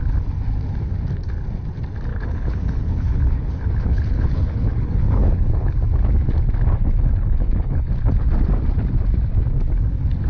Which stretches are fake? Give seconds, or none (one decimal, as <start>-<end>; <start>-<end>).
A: 2.1-5.7; 6.8-7.9